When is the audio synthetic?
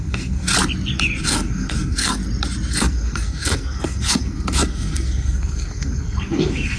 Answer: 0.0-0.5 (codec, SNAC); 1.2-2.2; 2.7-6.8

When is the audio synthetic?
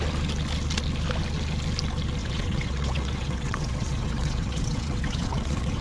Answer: 2.2-5.8 (vocoder, WaveNeXt)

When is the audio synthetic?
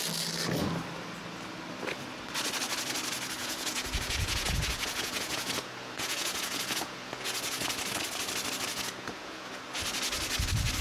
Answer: 3.4-7.8 (vocoder, Vocos); 8.7-9.6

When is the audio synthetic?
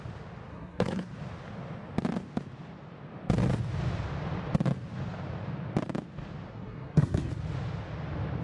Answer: 0.5-1.1 (codec, SNAC); 6.5-7.3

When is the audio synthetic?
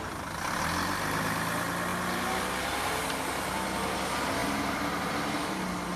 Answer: 4.4-5.1 (vocoder, BigVGAN v2)